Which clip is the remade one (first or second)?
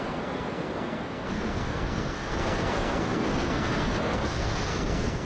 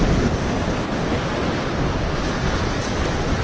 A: first